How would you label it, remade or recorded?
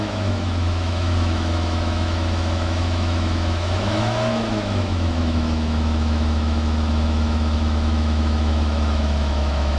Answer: remade